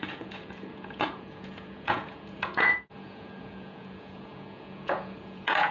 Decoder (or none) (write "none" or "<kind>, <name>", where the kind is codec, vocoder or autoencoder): vocoder, Vocos